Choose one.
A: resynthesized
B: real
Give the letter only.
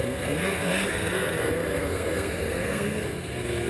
A